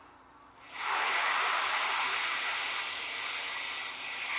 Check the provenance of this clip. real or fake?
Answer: real